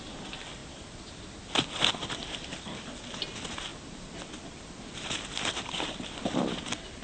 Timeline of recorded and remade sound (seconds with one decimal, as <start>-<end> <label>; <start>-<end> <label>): 0.0-7.0 recorded